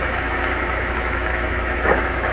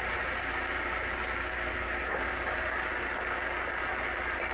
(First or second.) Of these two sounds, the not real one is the first